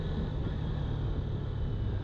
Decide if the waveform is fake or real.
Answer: real